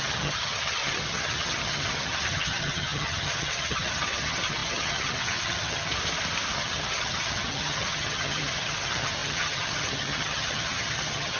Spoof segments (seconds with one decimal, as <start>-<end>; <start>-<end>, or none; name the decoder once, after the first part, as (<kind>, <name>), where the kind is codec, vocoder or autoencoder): 0.0-5.9 (vocoder, HiFi-GAN); 6.5-11.4